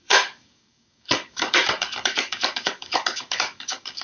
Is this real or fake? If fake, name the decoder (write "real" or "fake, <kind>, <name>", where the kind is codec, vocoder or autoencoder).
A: fake, codec, DAC